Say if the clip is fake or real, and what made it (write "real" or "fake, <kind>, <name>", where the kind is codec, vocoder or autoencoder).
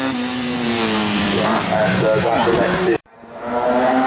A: fake, vocoder, BigVGAN v2